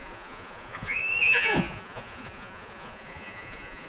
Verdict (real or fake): fake